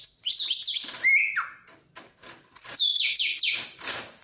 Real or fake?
real